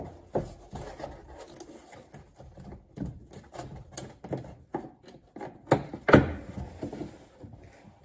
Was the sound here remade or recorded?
recorded